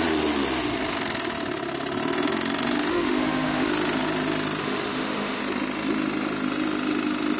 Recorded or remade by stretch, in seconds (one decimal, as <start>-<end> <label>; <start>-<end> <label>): 0.0-2.9 recorded; 2.9-3.7 remade; 3.7-4.6 recorded; 4.6-5.4 remade; 5.4-7.4 recorded